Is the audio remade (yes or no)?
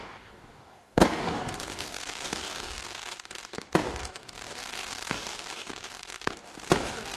yes